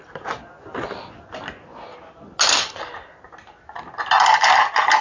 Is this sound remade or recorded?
recorded